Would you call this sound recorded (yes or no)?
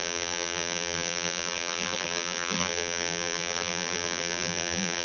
no